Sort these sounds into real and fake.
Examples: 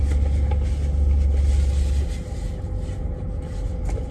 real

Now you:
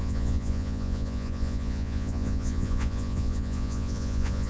fake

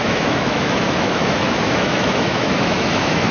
fake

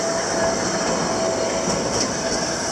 real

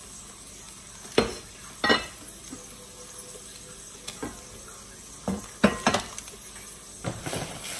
real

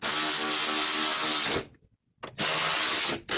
real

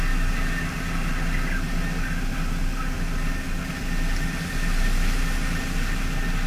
real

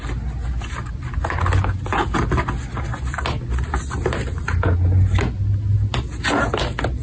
real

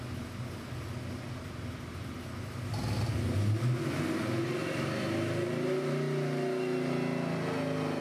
real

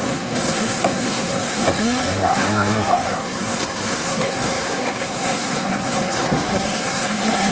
fake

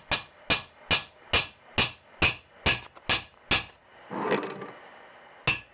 real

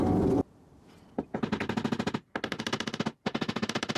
real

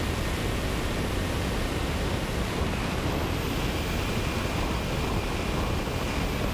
real